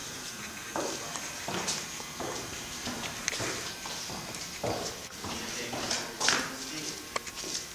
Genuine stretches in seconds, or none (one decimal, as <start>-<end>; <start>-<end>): 0.7-1.1; 4.4-5.0; 6.4-7.7